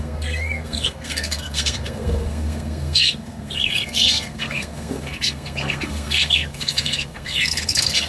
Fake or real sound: fake